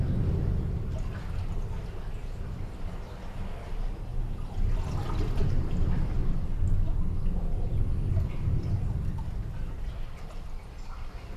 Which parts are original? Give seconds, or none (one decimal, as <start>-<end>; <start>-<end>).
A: 0.0-11.4